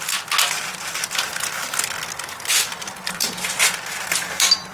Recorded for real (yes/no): yes